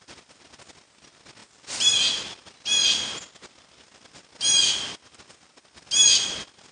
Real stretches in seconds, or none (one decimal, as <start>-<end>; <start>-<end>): 0.0-6.7